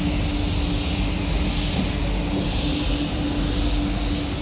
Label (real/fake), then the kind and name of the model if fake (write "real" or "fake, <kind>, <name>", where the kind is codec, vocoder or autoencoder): real